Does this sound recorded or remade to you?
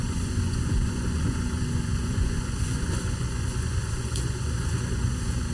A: remade